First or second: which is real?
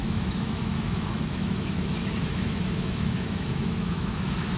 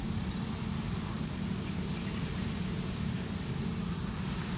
second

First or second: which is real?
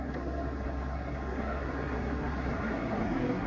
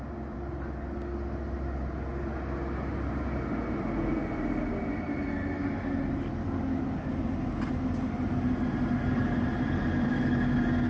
second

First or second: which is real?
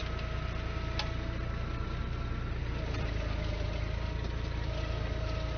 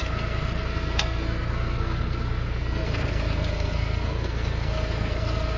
first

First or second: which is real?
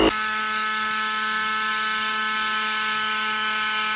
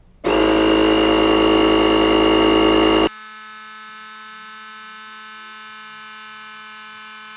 second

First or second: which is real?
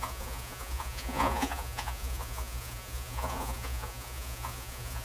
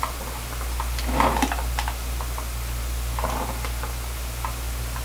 second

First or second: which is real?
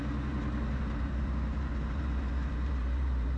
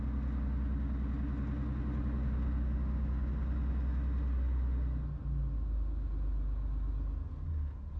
second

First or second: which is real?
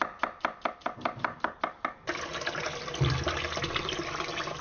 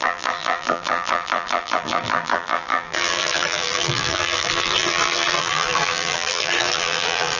first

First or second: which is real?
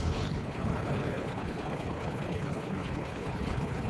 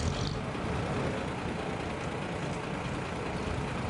second